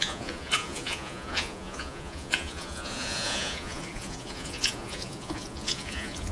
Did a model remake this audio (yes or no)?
yes